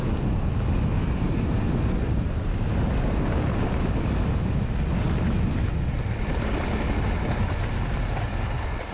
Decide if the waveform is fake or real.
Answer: real